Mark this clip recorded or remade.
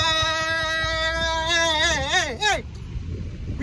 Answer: recorded